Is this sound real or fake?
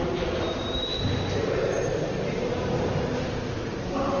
real